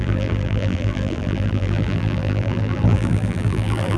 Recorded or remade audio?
remade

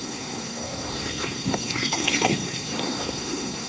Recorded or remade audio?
remade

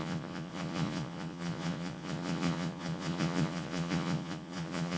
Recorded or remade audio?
remade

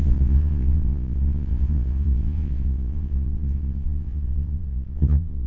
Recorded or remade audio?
remade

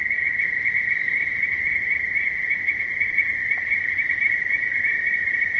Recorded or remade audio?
recorded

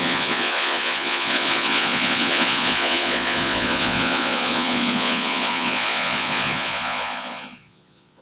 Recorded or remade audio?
remade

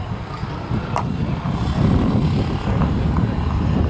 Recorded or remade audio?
recorded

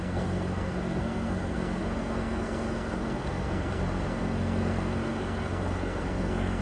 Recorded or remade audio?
remade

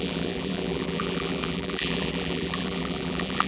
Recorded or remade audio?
remade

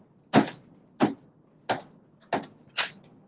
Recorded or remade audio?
recorded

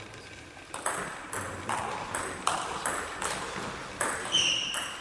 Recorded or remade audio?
recorded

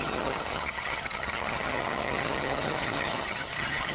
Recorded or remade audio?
remade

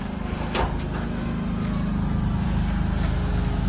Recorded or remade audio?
recorded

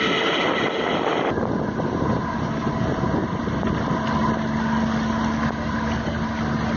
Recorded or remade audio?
recorded